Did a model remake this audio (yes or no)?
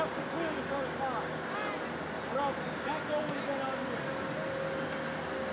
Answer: no